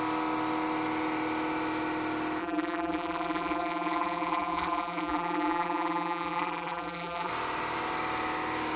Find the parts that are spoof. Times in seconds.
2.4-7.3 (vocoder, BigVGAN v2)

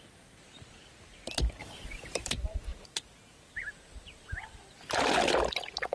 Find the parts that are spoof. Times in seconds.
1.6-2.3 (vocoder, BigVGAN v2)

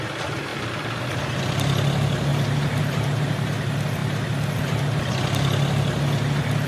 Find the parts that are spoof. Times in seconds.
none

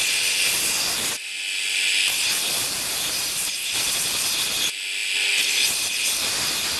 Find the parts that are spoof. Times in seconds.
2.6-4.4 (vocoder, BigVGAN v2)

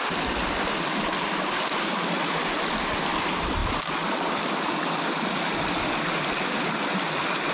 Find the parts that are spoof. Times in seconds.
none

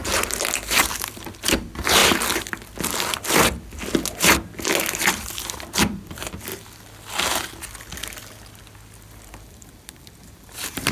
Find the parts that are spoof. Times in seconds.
0.0-2.0 (vocoder, BigVGAN v2); 5.1-6.5; 9.1-10.9

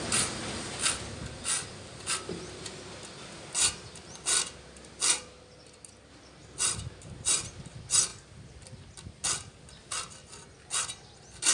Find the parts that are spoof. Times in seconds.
none

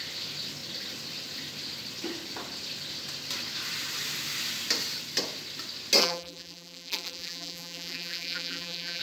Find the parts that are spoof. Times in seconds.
6.0-9.0 (vocoder, BigVGAN v2)